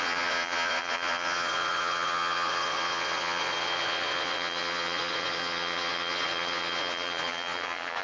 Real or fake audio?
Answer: fake